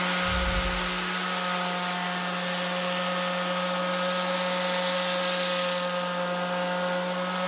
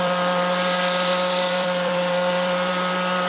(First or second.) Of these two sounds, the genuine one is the first